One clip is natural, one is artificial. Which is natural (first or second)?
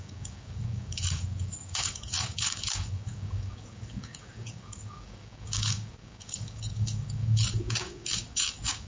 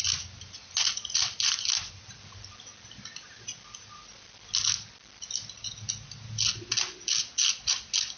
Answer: second